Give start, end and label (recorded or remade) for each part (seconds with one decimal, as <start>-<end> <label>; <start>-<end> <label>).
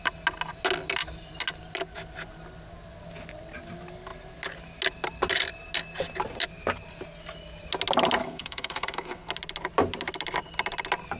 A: 0.0-8.2 recorded; 8.2-9.3 remade; 9.3-11.2 recorded